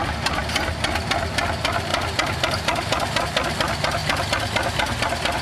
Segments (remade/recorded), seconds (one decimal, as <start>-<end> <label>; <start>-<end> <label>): 0.0-0.4 recorded; 0.4-0.9 remade; 0.9-5.4 recorded